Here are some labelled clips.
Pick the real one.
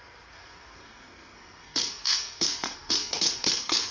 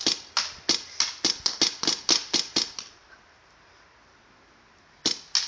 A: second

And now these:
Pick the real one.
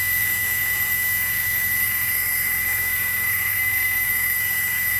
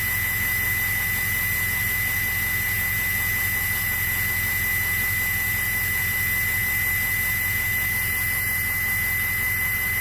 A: second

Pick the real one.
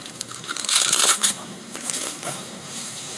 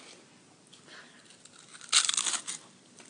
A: second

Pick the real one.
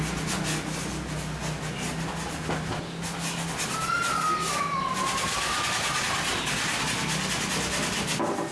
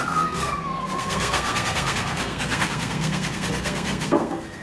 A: first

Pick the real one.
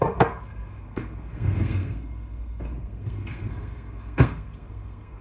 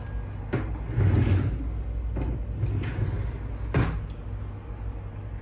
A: second